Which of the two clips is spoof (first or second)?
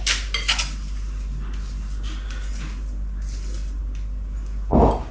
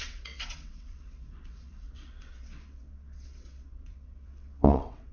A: second